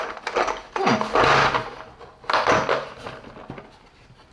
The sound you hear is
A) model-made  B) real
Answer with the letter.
B